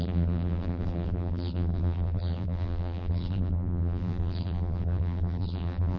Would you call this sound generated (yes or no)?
yes